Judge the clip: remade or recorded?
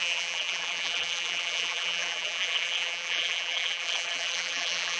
remade